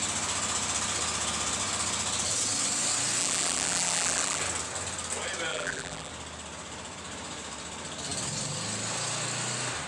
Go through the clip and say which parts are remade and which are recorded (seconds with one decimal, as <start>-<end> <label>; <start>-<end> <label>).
0.0-3.2 recorded; 3.2-4.4 remade; 4.4-5.5 recorded; 5.5-6.1 remade; 6.1-9.9 recorded